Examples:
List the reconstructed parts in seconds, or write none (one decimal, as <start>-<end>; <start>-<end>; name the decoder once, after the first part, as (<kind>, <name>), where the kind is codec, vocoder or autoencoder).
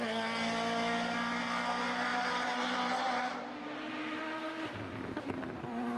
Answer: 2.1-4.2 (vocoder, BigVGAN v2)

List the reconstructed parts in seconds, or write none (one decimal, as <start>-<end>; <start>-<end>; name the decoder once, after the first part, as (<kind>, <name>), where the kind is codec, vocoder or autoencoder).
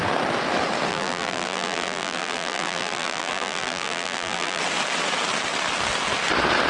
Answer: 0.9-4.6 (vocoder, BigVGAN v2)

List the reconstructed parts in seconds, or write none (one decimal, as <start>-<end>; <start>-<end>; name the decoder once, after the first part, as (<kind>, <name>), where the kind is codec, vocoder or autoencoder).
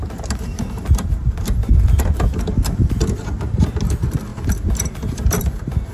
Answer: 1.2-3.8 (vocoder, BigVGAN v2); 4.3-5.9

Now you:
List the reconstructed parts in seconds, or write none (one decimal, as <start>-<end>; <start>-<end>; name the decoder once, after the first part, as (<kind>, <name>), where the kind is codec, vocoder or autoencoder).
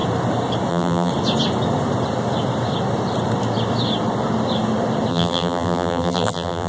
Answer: 0.7-1.1 (vocoder, BigVGAN v2); 5.1-6.7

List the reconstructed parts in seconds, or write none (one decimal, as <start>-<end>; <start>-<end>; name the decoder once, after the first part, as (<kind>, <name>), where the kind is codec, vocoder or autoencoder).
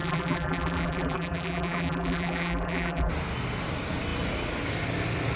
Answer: 0.0-3.1 (vocoder, BigVGAN v2)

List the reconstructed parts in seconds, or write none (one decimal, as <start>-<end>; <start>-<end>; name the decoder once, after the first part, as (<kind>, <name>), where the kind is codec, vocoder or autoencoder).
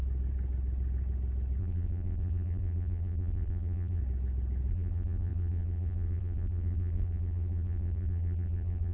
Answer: 1.6-4.0 (vocoder, BigVGAN v2); 4.7-8.9